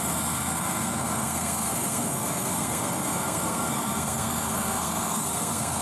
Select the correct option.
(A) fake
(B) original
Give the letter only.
A